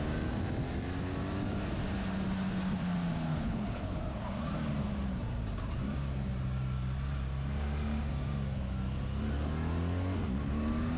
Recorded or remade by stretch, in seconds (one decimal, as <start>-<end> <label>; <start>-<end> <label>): 0.0-3.3 recorded; 3.3-4.0 remade; 4.0-11.0 recorded